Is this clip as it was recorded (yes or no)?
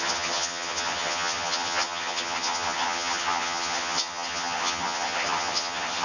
no